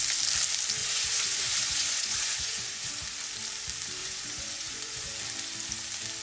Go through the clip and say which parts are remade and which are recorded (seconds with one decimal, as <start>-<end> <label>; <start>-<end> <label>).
0.0-0.8 recorded; 0.8-2.9 remade; 2.9-4.0 recorded; 4.0-5.1 remade; 5.1-6.2 recorded